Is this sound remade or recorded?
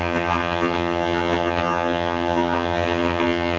remade